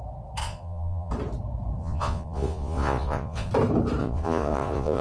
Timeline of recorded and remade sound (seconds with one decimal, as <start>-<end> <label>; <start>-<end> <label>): 0.0-0.4 recorded; 0.4-1.1 remade; 1.1-1.8 recorded; 1.8-3.5 remade; 3.5-4.0 recorded; 4.0-5.0 remade